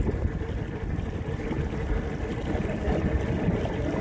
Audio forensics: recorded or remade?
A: recorded